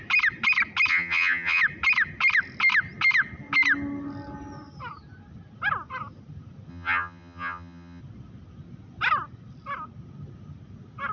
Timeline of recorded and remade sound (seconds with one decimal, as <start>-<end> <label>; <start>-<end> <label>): 0.0-0.9 recorded; 0.9-1.6 remade; 1.6-6.7 recorded; 6.7-8.0 remade; 8.0-11.1 recorded